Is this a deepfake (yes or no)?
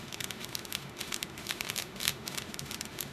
yes